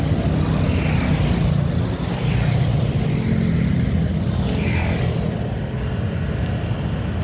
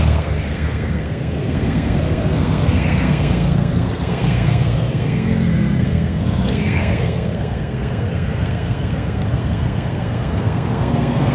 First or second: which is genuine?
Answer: first